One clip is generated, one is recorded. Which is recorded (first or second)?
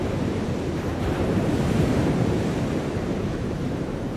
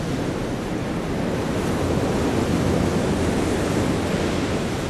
second